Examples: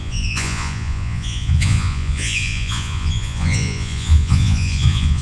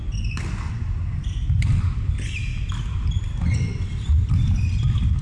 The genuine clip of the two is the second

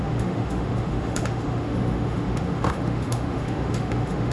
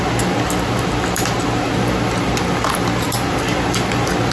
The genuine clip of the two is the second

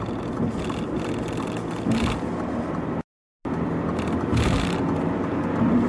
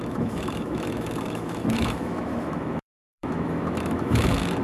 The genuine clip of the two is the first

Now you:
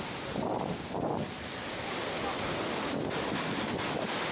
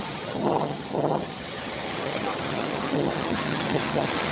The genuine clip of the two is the first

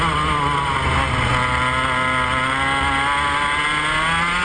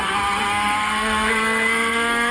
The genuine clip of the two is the first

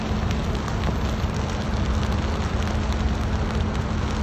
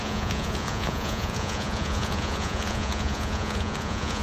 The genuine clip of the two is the first